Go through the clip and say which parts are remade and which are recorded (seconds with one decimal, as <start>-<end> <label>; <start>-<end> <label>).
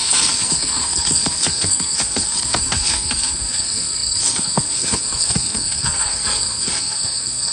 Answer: 0.0-7.5 remade